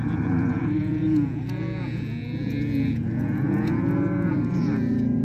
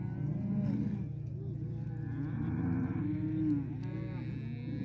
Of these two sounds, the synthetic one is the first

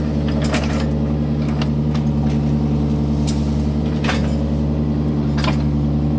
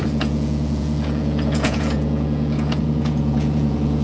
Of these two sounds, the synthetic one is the second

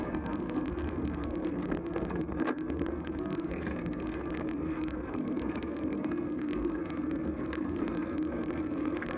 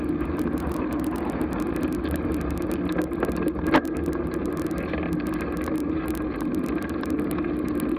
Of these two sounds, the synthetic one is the first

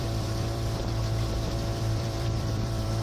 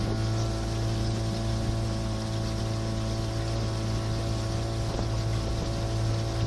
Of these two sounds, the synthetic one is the first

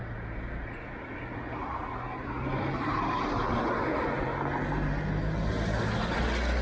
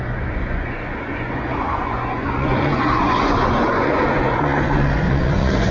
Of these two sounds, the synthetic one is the second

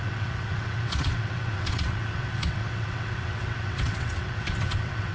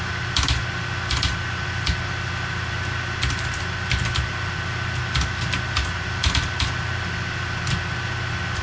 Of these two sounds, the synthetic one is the first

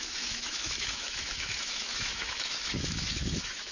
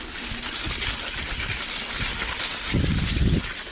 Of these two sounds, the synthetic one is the first